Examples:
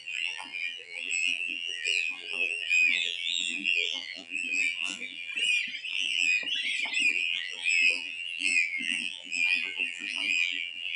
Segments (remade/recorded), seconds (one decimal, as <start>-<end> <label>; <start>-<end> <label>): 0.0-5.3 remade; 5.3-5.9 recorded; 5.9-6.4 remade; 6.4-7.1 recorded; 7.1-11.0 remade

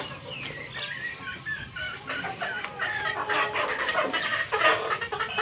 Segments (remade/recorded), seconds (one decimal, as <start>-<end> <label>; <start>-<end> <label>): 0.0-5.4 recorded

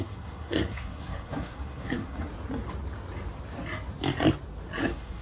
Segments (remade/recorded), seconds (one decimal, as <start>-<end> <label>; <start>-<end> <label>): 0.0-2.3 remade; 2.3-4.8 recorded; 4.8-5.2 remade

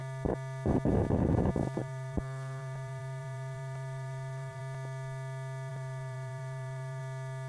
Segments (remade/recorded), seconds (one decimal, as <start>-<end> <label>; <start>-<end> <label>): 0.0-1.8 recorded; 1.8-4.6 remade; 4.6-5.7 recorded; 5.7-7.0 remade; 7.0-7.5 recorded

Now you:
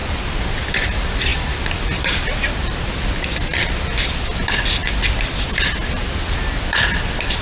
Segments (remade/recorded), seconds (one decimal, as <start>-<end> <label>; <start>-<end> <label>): 0.0-0.7 recorded; 0.7-7.4 remade